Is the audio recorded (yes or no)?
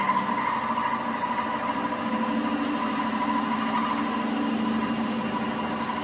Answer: yes